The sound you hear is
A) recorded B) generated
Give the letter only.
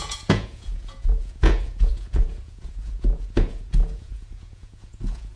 B